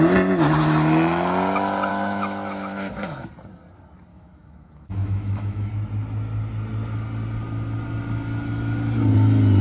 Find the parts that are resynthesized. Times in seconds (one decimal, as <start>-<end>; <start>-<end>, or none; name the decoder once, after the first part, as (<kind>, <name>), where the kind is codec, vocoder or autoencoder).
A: 1.9-3.3 (autoencoder, DAC-VAE); 4.1-5.7